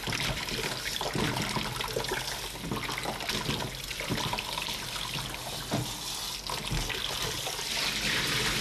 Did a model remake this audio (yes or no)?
no